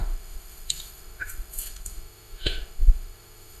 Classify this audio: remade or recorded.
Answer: remade